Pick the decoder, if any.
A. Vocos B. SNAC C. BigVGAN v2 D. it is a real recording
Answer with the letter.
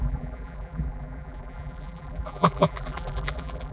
C